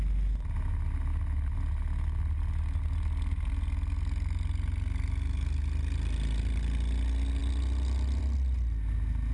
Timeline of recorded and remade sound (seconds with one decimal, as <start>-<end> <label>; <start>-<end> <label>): 0.0-9.3 recorded